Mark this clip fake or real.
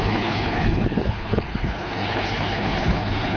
fake